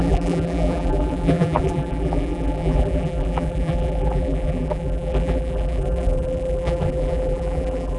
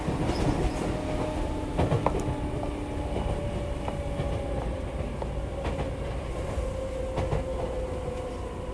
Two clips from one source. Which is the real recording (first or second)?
second